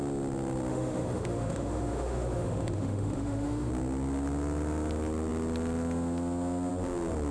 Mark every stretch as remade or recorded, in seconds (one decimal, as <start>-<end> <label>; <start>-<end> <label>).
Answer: 0.0-0.7 recorded; 0.7-3.7 remade; 3.7-7.3 recorded